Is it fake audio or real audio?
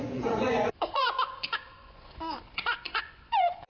fake